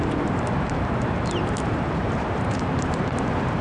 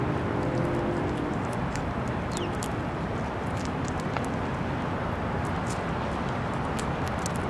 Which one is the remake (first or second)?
first